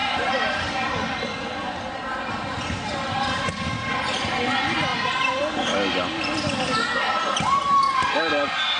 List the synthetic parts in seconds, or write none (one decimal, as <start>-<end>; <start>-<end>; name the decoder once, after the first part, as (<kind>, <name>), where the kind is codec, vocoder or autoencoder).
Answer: 0.0-1.1 (vocoder, BigVGAN v2); 4.9-5.4